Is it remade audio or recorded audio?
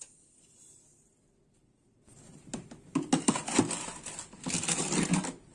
recorded